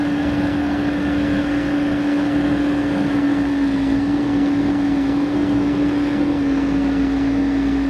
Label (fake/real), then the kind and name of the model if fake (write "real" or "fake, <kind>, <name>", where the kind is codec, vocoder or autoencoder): fake, codec, SNAC